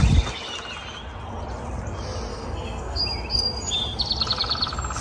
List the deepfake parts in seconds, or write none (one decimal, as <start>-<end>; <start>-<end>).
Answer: 2.3-3.0